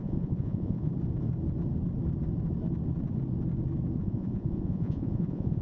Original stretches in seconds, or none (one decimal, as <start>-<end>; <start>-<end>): 0.9-4.0